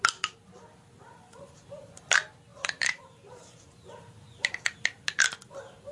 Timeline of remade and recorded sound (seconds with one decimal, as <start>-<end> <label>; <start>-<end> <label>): 0.0-2.5 recorded; 2.5-4.8 remade; 4.8-5.9 recorded